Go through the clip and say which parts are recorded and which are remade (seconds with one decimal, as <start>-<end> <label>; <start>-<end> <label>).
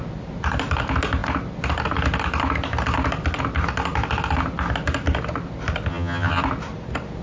0.0-5.9 recorded; 5.9-6.4 remade; 6.4-7.2 recorded